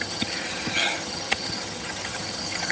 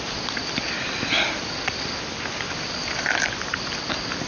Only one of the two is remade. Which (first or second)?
first